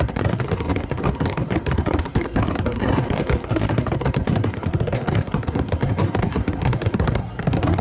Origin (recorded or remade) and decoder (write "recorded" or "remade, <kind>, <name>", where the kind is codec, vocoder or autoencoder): remade, codec, SNAC